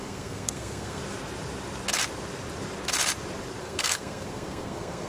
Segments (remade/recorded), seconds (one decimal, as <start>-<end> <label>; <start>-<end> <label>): 0.0-1.0 remade; 1.0-3.6 recorded; 3.6-5.1 remade